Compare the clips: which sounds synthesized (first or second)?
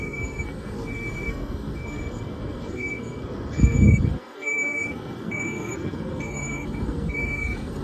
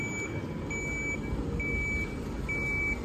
first